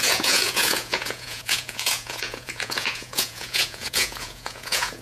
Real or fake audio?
fake